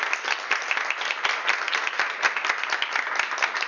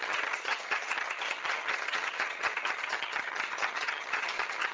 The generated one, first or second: second